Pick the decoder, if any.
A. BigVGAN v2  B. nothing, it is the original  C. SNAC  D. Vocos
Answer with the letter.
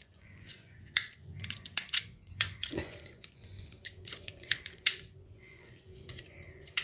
D